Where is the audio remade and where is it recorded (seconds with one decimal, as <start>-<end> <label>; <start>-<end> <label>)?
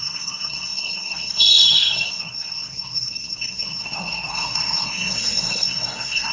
0.0-6.3 remade